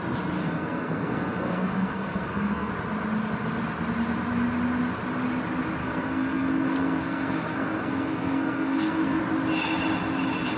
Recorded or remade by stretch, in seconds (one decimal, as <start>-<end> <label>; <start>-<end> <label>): 0.0-0.4 recorded; 0.4-2.7 remade; 2.7-5.8 recorded; 5.8-9.2 remade; 9.2-10.6 recorded